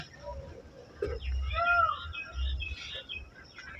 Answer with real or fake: real